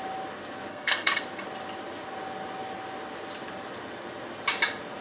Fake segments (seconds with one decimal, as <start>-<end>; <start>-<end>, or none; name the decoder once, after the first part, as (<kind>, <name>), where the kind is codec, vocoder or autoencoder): 0.7-1.2 (codec, SNAC)